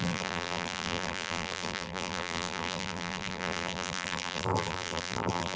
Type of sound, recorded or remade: remade